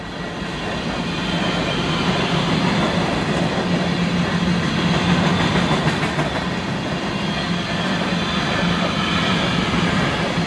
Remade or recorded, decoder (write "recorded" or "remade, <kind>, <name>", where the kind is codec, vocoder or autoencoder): recorded